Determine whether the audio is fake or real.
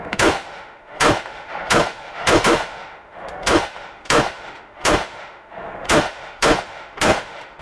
fake